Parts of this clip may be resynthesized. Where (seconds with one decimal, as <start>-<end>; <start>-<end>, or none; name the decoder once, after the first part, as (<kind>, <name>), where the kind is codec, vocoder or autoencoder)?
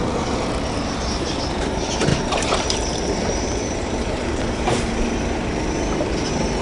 2.1-4.9 (vocoder, BigVGAN v2)